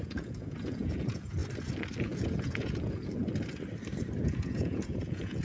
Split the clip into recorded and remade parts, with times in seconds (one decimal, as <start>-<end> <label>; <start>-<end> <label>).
0.0-1.4 remade; 1.4-2.0 recorded; 2.0-3.2 remade; 3.2-4.2 recorded; 4.2-5.4 remade